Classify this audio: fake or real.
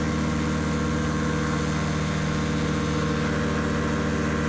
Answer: real